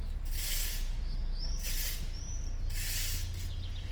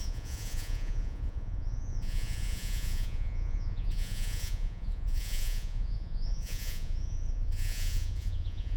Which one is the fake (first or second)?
second